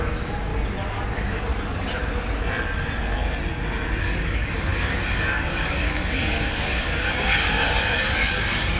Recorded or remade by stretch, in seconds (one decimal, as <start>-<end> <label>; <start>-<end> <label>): 0.0-0.5 remade; 0.5-1.1 recorded; 1.1-1.5 remade; 1.5-4.0 recorded; 4.0-8.8 remade